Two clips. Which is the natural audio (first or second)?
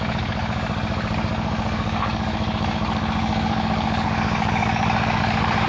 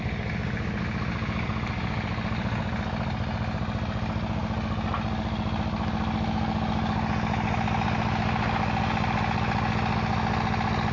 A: second